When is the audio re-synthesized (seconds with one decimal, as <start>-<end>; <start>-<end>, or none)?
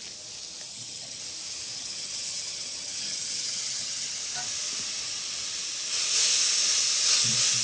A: 0.7-1.2; 1.7-4.2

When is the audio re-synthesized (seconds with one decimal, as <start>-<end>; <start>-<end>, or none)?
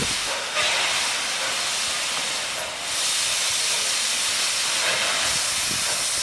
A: 0.0-0.6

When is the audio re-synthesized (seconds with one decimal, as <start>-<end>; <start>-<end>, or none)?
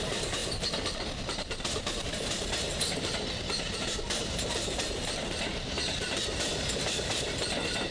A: 0.0-7.9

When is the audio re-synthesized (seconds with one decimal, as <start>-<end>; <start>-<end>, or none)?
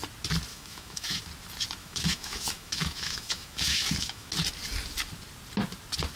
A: 0.5-1.2; 1.8-4.3